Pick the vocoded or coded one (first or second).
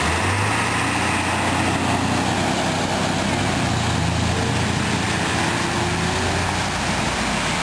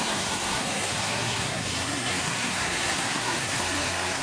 second